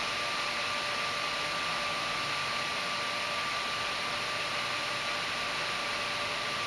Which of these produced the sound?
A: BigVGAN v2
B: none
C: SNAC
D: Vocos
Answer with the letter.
B